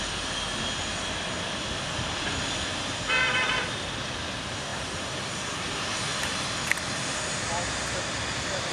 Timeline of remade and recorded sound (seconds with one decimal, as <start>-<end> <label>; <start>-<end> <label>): 0.0-8.7 recorded